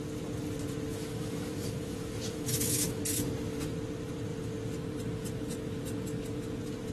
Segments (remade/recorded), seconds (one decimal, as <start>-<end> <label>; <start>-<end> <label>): 0.0-0.9 recorded; 0.9-3.0 remade; 3.0-6.9 recorded